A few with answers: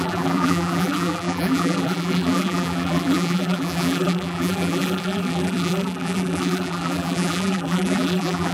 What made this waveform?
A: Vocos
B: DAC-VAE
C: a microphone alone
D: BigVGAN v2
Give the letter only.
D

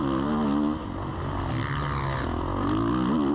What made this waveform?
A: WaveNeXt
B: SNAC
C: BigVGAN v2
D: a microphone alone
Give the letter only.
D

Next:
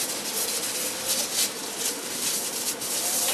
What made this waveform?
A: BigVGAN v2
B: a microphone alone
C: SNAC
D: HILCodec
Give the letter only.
B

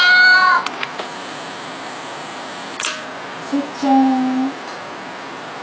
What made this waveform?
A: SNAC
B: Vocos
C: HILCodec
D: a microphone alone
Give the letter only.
D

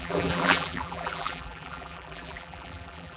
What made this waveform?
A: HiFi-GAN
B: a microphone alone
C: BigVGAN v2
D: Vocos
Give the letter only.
C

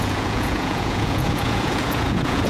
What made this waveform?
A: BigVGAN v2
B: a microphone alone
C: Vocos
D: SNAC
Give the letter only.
C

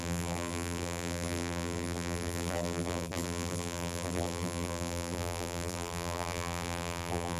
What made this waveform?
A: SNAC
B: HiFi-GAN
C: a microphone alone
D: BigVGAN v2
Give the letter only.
D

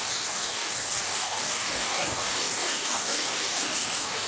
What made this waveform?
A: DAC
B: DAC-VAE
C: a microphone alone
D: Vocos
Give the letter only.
A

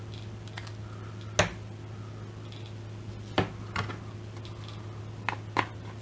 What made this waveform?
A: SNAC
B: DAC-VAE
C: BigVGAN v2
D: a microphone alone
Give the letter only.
D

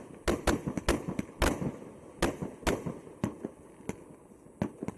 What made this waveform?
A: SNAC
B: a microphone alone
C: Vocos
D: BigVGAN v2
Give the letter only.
B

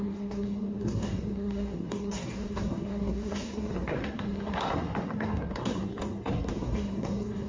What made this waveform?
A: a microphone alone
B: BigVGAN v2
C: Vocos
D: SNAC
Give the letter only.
D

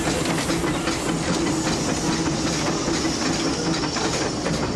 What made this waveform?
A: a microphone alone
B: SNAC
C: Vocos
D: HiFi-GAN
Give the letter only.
A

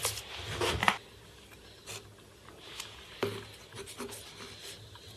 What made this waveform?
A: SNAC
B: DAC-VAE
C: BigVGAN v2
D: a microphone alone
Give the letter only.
D